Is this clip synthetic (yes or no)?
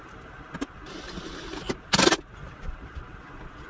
no